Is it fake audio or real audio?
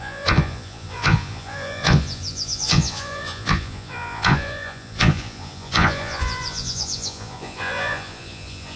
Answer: fake